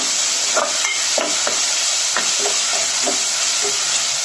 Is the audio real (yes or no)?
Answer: yes